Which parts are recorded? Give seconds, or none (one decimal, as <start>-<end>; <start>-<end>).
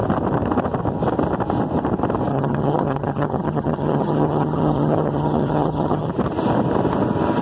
0.0-2.3; 6.1-7.4